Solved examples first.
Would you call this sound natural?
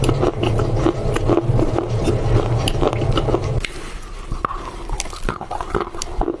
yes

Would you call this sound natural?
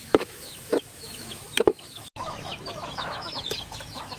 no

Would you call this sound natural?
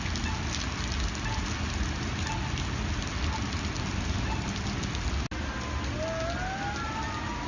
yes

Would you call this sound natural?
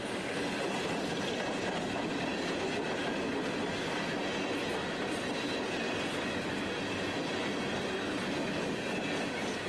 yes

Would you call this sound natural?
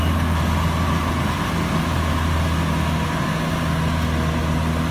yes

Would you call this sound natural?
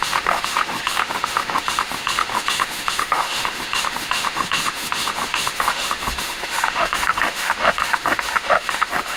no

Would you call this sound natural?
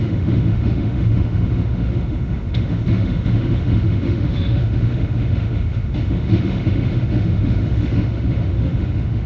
no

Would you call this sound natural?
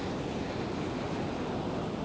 yes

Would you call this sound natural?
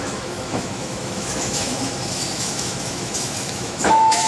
no